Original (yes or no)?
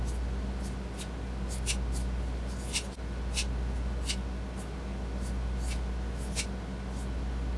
yes